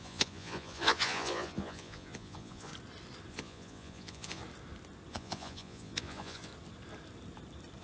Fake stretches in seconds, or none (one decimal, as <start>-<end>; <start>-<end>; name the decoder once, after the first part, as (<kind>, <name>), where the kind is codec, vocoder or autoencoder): 0.0-2.7 (vocoder, Vocos); 3.3-4.4; 5.1-6.5